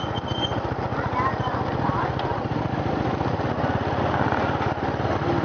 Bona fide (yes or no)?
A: yes